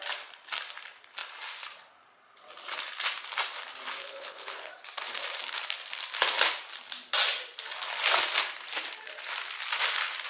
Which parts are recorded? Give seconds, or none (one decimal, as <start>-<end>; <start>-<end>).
0.0-4.0; 4.7-10.3